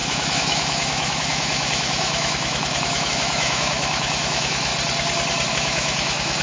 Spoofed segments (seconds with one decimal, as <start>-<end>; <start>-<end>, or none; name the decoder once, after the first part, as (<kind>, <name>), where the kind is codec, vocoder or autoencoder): 0.0-4.7 (autoencoder, DAC-VAE); 5.5-6.4